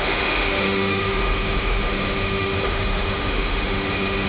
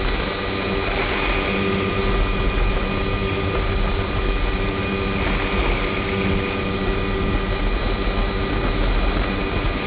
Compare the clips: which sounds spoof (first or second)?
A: first